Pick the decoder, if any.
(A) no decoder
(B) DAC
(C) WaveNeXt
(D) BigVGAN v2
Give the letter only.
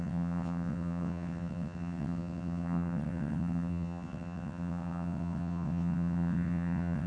C